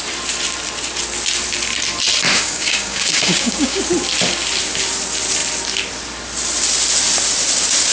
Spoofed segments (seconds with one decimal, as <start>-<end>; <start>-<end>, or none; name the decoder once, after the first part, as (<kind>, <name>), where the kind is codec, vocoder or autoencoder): 2.3-3.8 (codec, DAC)